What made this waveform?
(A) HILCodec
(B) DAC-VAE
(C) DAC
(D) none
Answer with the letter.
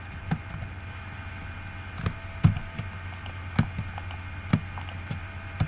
D